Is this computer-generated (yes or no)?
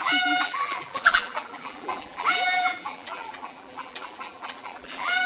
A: yes